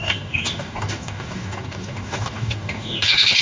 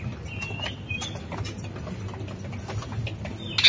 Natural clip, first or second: second